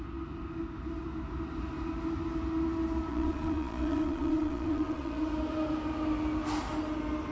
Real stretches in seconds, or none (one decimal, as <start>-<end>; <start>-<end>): 0.0-3.1; 5.2-7.3